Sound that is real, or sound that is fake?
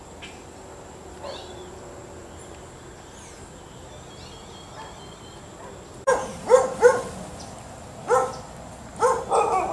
real